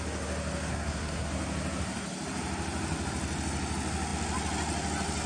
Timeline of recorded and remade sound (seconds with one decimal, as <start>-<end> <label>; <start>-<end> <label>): 0.0-0.7 recorded; 0.7-1.3 remade; 1.3-5.3 recorded